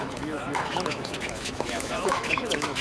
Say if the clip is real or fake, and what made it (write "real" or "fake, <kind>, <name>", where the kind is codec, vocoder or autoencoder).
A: fake, autoencoder, DAC-VAE